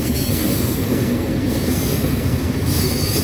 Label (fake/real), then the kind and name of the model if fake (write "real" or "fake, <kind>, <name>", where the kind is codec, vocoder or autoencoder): fake, codec, SNAC